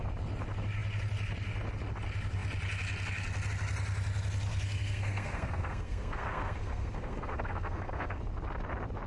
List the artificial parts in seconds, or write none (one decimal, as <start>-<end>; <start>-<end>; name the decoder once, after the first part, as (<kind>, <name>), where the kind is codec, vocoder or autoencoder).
4.5-8.2 (codec, SNAC)